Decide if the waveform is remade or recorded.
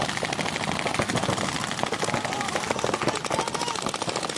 recorded